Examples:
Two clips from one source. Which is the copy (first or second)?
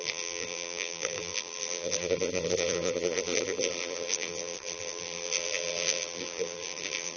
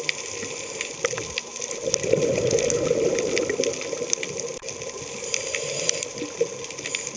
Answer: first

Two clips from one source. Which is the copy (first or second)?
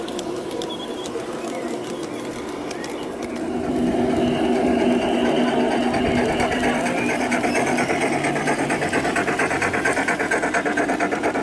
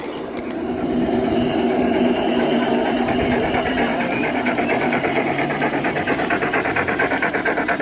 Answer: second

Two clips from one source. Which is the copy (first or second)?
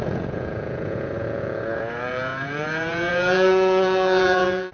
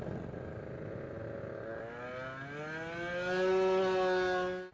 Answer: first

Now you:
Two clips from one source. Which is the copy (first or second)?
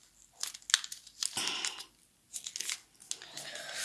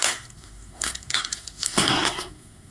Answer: second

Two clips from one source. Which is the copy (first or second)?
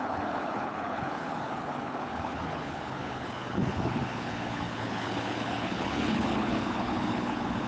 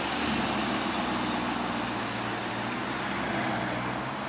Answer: first